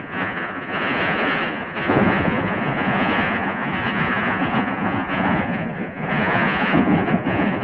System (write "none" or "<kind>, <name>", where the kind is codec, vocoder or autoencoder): vocoder, Vocos